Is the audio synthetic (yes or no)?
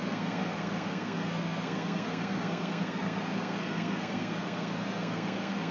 yes